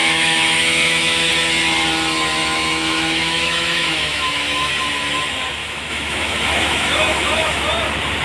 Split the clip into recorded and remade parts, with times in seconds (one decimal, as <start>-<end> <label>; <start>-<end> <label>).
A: 0.0-1.3 remade; 1.3-2.4 recorded; 2.4-4.7 remade; 4.7-5.6 recorded; 5.6-7.6 remade; 7.6-8.2 recorded